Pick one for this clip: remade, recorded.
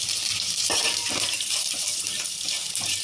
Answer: remade